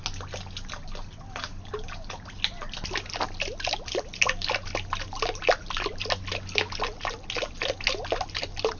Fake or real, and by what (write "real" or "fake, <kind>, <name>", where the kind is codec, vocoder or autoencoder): real